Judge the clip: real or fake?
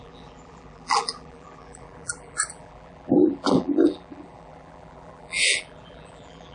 fake